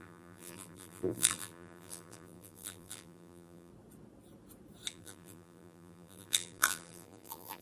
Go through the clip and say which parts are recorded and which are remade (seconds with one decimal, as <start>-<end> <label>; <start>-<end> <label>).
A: 0.0-3.7 remade; 3.7-4.9 recorded; 4.9-7.6 remade